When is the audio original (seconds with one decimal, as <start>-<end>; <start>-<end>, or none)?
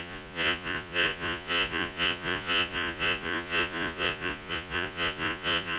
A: none